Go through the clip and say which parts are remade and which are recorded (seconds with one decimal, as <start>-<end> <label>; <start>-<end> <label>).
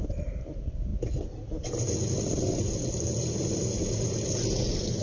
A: 0.0-5.0 recorded